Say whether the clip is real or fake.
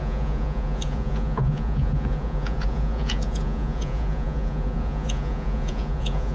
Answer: fake